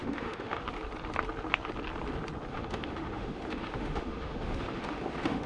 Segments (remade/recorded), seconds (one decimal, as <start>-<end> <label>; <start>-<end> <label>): 0.0-0.6 remade; 0.6-2.5 recorded; 2.5-5.5 remade